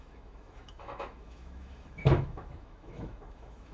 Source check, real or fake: fake